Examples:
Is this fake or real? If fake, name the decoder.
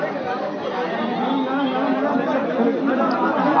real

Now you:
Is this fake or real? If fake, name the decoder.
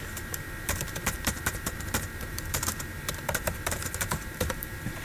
fake, vocoder, BigVGAN v2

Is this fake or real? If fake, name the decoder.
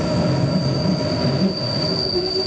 real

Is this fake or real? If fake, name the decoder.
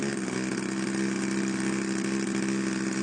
real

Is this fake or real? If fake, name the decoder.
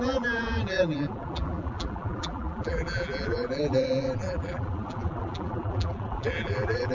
fake, vocoder, BigVGAN v2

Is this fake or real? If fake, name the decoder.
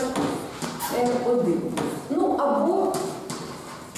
real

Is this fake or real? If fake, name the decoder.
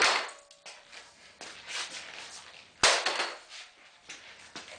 real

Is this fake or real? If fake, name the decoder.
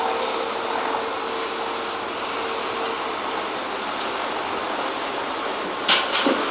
real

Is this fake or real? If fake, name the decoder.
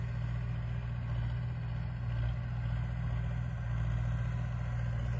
real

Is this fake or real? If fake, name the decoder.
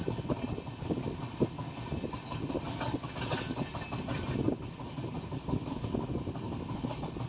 real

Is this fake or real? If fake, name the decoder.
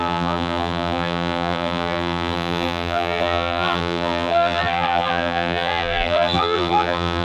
fake, vocoder, BigVGAN v2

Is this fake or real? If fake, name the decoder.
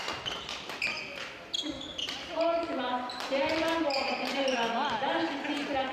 real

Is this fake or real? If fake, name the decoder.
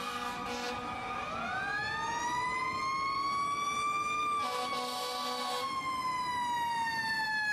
real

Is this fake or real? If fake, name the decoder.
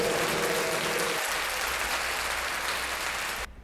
real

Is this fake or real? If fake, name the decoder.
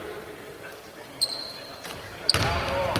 fake, vocoder, BigVGAN v2